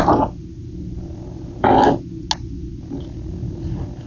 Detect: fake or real real